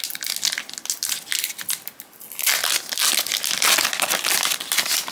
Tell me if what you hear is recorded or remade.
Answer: recorded